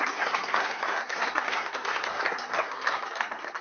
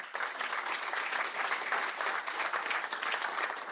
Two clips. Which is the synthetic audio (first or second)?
first